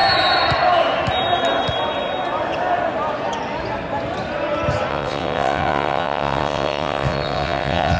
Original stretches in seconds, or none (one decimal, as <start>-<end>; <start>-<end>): 0.0-4.9